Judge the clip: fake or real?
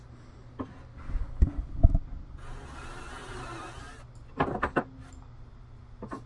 real